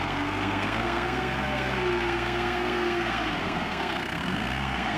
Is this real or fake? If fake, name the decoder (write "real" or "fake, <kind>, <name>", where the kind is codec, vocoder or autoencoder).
fake, codec, SNAC